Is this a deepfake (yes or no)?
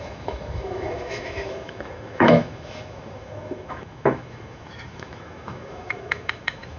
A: yes